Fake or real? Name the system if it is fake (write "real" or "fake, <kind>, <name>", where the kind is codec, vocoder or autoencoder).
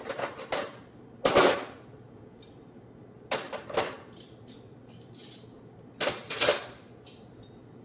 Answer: real